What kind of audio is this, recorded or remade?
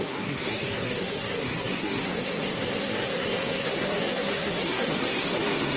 remade